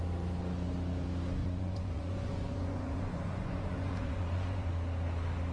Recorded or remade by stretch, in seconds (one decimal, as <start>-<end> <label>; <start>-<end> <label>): 0.0-1.4 recorded; 1.4-4.7 remade; 4.7-5.5 recorded